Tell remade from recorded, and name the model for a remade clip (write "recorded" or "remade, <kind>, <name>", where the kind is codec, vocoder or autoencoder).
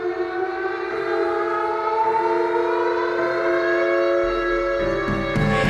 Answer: recorded